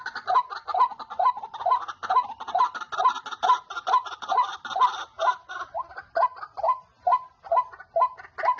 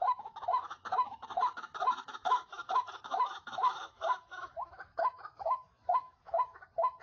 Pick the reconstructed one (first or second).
second